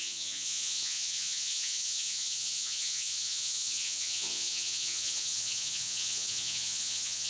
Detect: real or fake fake